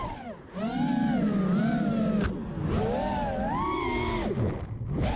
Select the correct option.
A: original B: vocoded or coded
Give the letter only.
A